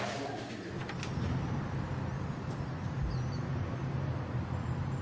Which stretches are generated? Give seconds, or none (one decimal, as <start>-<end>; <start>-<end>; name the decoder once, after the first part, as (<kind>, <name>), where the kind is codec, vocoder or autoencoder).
none